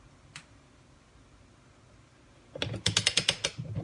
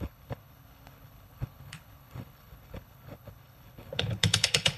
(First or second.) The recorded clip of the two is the first